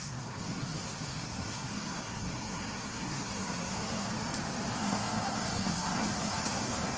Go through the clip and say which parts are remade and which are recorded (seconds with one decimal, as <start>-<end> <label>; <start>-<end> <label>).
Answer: 0.0-4.1 remade; 4.1-4.7 recorded; 4.7-7.0 remade